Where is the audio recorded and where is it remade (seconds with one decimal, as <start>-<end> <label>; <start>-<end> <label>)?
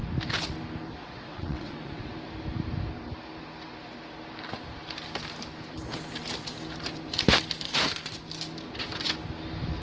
0.0-1.0 recorded; 1.0-2.1 remade; 2.1-9.8 recorded